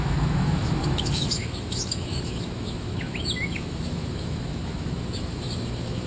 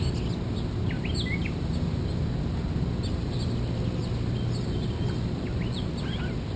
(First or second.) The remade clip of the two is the first